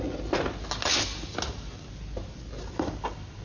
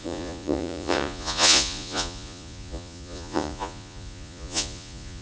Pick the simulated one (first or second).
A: second